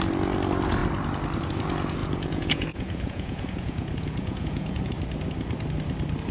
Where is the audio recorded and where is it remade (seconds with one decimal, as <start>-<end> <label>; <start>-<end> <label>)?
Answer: 0.0-2.0 recorded; 2.0-4.9 remade; 4.9-6.3 recorded